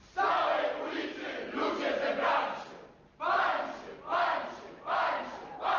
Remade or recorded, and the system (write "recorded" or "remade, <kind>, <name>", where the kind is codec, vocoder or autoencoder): recorded